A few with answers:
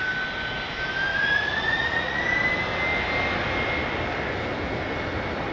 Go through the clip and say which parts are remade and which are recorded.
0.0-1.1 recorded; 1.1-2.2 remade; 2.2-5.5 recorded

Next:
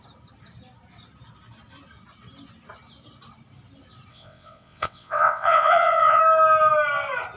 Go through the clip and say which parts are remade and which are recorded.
0.0-4.1 recorded; 4.1-6.2 remade; 6.2-7.4 recorded

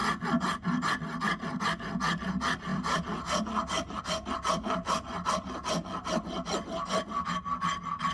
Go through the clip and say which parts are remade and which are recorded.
0.0-8.1 recorded

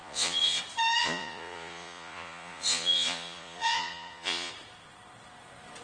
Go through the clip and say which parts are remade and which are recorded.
0.0-0.6 remade; 0.6-1.0 recorded; 1.0-4.5 remade; 4.5-5.8 recorded

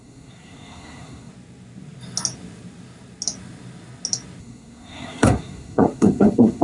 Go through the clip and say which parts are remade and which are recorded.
0.0-1.3 remade; 1.3-4.4 recorded; 4.4-6.6 remade